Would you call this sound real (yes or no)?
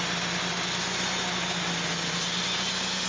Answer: yes